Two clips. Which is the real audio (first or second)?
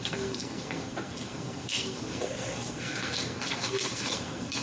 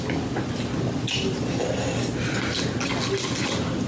second